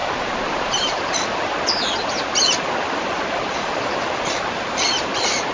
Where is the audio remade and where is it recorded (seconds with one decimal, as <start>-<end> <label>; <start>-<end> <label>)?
0.0-1.5 remade; 1.5-5.5 recorded